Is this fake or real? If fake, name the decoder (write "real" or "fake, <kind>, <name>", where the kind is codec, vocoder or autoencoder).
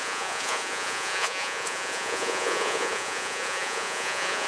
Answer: fake, vocoder, Vocos